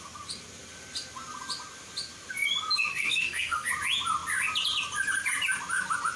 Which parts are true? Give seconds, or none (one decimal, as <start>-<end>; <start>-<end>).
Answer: 0.0-2.9; 3.7-6.2